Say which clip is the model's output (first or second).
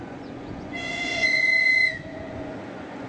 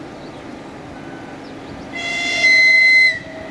first